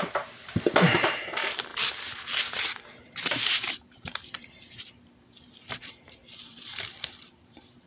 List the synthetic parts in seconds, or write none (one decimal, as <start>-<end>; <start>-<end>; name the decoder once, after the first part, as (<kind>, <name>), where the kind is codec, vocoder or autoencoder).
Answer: 0.0-1.7 (vocoder, BigVGAN v2); 2.9-7.9